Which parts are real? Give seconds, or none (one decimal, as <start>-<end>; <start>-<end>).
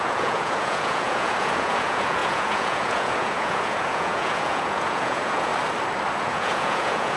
5.5-6.2